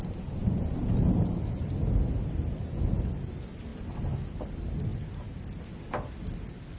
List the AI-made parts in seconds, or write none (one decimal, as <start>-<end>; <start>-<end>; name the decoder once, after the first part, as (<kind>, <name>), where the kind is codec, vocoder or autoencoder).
0.4-1.7 (vocoder, BigVGAN v2)

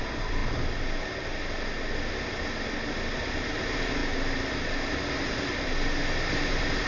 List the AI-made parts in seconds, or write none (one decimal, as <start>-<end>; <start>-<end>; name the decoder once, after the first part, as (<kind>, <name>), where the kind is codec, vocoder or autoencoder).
0.0-0.4 (vocoder, BigVGAN v2); 2.1-4.0; 6.3-6.9

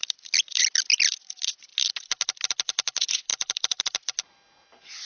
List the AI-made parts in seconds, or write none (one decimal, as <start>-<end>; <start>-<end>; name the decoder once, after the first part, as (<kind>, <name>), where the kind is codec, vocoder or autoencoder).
0.0-0.6 (vocoder, BigVGAN v2); 3.3-3.8

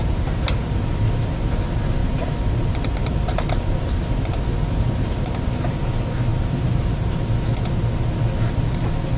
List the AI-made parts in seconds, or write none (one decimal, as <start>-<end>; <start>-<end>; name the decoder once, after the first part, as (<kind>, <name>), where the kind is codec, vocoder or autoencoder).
0.0-1.0 (vocoder, BigVGAN v2); 2.0-5.6; 6.3-7.2

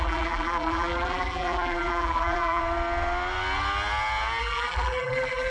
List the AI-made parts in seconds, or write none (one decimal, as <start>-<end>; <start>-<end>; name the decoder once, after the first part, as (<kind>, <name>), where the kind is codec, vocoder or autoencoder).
0.0-2.6 (vocoder, BigVGAN v2); 4.4-5.5

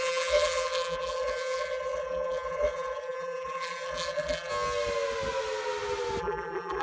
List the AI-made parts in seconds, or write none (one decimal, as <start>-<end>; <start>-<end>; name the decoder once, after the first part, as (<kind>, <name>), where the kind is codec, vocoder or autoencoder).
0.0-4.5 (vocoder, BigVGAN v2); 6.2-6.8

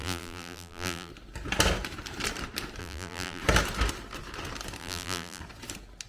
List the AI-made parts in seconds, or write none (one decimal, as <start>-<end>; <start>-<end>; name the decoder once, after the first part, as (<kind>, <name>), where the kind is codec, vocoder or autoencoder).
0.0-1.1 (vocoder, BigVGAN v2); 2.8-3.4; 4.8-5.4